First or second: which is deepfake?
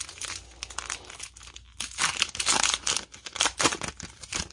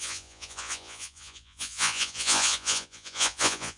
second